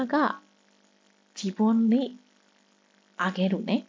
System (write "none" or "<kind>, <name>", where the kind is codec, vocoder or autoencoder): none